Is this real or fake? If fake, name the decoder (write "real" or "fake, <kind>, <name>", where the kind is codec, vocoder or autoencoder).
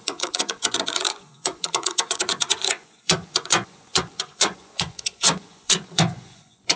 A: fake, vocoder, Vocos